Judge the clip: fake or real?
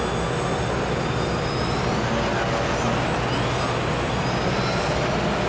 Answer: real